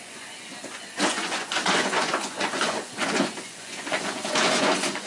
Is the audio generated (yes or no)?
yes